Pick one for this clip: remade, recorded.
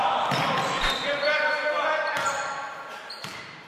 recorded